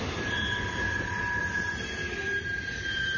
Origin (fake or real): real